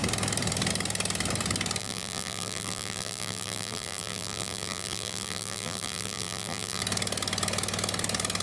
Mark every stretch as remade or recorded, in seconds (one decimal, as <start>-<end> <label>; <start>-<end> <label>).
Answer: 0.0-1.8 recorded; 1.8-6.8 remade; 6.8-8.4 recorded